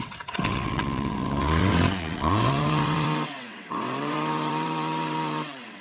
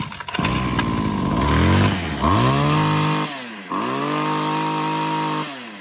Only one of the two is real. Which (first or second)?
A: second